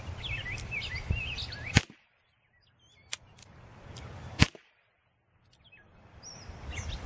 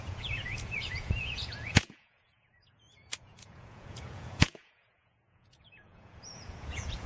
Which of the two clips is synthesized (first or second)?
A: second